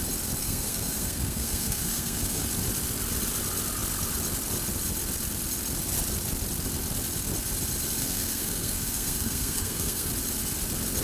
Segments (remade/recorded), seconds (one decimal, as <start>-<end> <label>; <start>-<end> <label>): 0.0-0.4 recorded; 0.4-2.4 remade; 2.4-8.0 recorded; 8.0-10.1 remade; 10.1-11.0 recorded